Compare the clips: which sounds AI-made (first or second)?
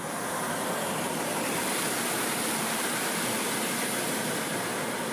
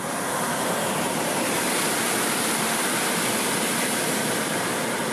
second